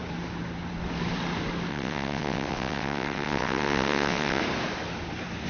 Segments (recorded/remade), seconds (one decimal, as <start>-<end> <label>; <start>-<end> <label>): 0.0-1.7 recorded; 1.7-4.4 remade; 4.4-5.5 recorded

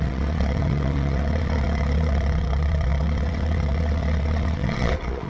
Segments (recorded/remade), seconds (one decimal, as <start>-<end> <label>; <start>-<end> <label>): 0.0-5.3 remade

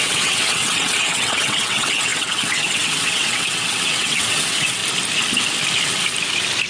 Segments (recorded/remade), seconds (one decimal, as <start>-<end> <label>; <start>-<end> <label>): 0.0-4.8 remade; 4.8-6.7 recorded

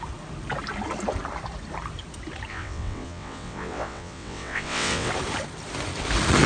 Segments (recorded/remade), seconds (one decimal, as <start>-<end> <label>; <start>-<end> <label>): 0.0-2.5 recorded; 2.5-5.1 remade; 5.1-6.5 recorded

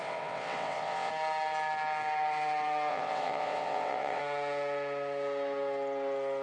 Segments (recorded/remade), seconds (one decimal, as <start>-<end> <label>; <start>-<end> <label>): 0.0-1.1 remade; 1.1-2.9 recorded; 2.9-4.2 remade; 4.2-6.4 recorded